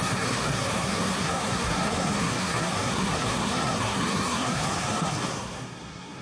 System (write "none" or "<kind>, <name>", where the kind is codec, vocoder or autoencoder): codec, SNAC